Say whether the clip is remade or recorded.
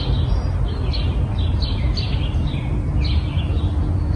recorded